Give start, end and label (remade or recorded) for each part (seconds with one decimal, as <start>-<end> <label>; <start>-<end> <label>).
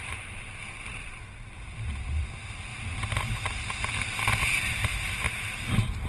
0.0-6.1 recorded